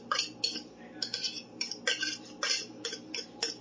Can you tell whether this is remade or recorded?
recorded